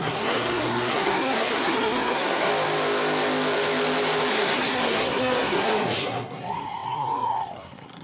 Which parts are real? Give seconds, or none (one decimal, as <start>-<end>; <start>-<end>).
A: 2.5-4.3